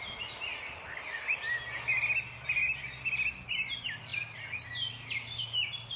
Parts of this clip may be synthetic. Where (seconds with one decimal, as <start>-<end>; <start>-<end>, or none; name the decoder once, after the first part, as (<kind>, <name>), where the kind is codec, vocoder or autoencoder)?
none